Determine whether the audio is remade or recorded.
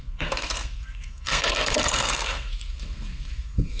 remade